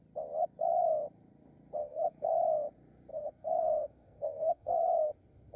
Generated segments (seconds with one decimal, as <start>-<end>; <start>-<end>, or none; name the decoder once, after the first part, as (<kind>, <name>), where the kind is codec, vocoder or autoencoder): 1.8-2.4 (codec, SNAC); 3.1-5.1

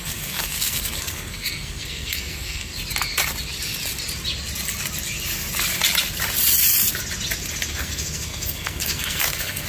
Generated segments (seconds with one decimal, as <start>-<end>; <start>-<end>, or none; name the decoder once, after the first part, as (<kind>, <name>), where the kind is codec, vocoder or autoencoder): 0.0-2.7 (codec, SNAC); 7.7-9.7

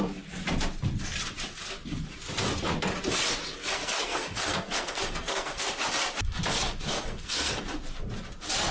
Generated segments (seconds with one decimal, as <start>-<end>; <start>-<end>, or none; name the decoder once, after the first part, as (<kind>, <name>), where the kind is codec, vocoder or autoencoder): 3.6-5.8 (codec, SNAC); 6.9-7.6

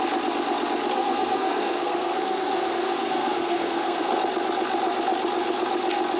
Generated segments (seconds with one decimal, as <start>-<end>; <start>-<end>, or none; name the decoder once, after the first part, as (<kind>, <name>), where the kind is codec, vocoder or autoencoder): 0.9-4.2 (codec, SNAC)

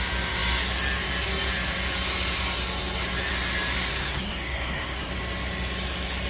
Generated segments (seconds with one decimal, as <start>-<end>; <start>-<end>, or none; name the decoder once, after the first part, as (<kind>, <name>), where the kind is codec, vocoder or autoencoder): 3.9-5.1 (codec, SNAC)